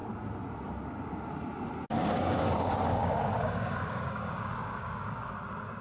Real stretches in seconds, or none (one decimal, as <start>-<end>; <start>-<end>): 0.0-2.0; 5.3-5.8

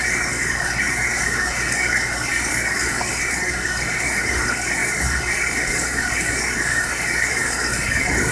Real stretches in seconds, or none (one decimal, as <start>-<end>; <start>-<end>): none